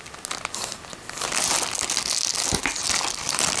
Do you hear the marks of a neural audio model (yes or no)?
no